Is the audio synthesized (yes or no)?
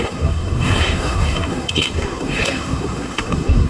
yes